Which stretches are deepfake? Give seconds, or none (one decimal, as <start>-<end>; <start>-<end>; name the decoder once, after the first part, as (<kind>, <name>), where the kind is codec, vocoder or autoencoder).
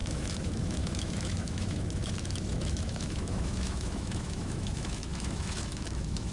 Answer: 0.0-6.3 (autoencoder, DAC-VAE)